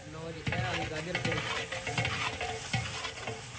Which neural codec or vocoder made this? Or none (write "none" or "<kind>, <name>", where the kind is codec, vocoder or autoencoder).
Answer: none